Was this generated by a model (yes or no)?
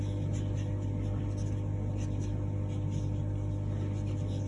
no